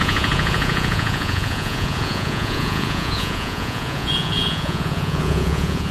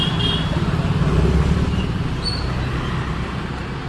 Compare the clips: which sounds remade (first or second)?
first